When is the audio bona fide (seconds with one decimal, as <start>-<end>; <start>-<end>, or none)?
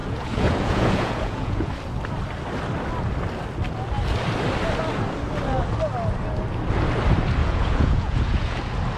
1.7-7.4; 8.6-9.0